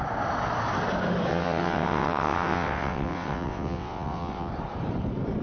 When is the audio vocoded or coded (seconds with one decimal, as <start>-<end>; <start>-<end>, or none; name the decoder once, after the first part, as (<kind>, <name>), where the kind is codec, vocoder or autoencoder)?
1.3-4.5 (vocoder, WaveNeXt)